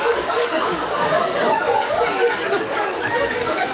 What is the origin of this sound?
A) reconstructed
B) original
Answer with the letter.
A